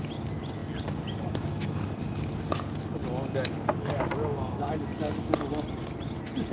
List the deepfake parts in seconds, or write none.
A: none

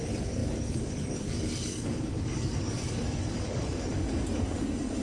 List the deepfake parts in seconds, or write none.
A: 0.0-5.0 (codec, DAC)

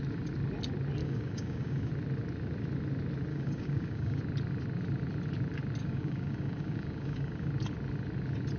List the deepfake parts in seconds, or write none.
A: 1.0-1.9 (codec, DAC); 3.3-4.2; 5.8-7.5

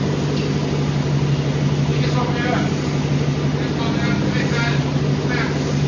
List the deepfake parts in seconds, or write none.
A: none